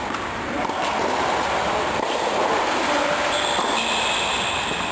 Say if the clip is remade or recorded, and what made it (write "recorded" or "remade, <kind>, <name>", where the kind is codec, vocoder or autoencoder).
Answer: recorded